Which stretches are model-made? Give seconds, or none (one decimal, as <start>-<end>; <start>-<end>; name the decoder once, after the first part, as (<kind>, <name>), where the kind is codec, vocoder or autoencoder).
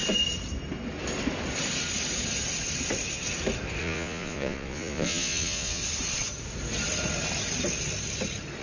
3.8-5.8 (vocoder, Vocos)